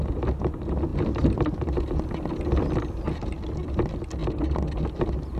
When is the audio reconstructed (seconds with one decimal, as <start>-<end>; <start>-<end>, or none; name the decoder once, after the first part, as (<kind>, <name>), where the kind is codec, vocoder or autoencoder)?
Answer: 0.9-1.8 (vocoder, BigVGAN v2)